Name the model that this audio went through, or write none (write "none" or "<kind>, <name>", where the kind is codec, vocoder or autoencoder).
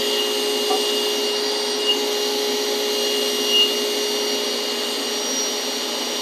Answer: none